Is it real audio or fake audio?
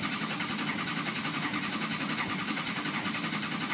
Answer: fake